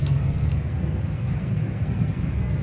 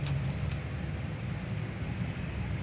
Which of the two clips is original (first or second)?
second